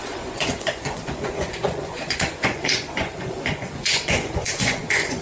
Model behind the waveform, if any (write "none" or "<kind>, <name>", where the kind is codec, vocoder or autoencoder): vocoder, Vocos